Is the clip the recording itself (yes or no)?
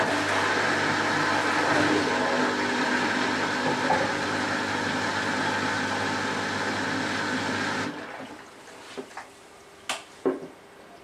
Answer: yes